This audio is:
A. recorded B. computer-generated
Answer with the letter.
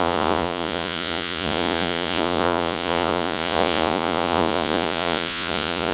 B